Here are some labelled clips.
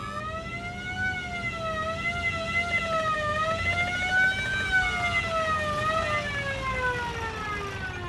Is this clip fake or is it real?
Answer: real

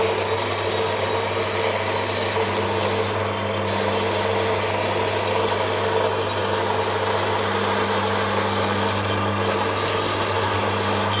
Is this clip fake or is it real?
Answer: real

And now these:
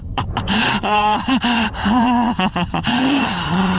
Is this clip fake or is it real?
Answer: fake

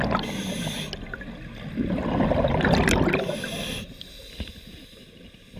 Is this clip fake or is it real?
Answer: real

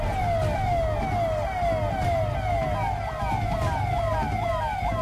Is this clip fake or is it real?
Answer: real